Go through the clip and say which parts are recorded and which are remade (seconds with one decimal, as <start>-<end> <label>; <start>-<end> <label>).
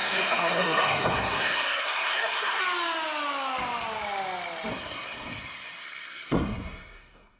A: 0.0-2.6 remade; 2.6-4.7 recorded; 4.7-7.4 remade